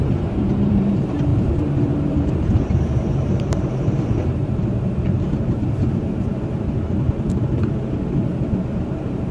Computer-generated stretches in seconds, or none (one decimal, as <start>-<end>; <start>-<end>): 0.0-6.0